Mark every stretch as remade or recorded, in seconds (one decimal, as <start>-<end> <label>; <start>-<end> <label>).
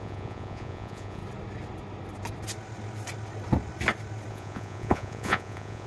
0.0-1.2 remade; 1.2-4.3 recorded; 4.3-5.9 remade